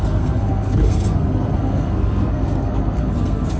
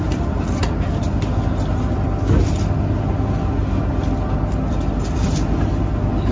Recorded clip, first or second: second